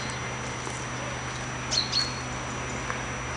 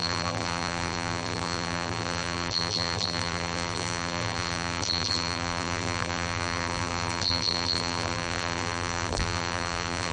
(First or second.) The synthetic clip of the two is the second